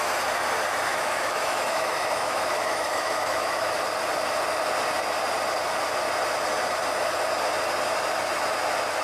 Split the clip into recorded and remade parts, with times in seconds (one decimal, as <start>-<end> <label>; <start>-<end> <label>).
0.0-0.9 recorded; 0.9-3.8 remade; 3.8-9.0 recorded